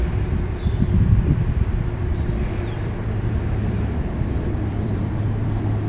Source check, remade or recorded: remade